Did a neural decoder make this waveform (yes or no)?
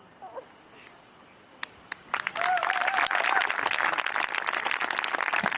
no